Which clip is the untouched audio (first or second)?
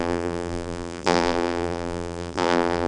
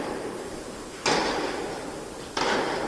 second